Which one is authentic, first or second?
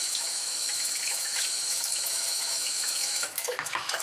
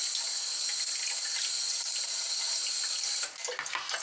second